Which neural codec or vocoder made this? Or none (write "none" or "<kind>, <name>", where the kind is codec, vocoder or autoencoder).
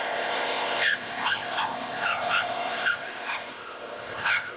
codec, ZipCodec